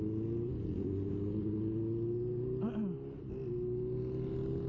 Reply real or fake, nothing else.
real